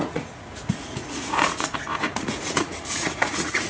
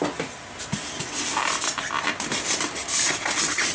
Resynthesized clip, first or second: first